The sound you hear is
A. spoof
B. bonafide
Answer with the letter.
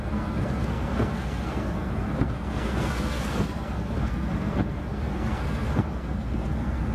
A